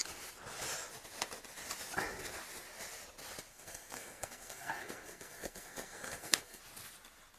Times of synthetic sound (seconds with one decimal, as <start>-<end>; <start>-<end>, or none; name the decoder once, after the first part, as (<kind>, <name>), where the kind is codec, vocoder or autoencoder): 3.5-6.6 (codec, SNAC)